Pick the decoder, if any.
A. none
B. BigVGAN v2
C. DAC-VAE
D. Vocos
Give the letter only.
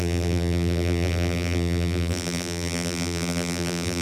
B